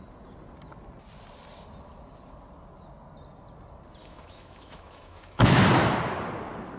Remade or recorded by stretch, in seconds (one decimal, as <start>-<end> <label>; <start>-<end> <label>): 0.0-4.0 recorded; 4.0-5.6 remade; 5.6-6.8 recorded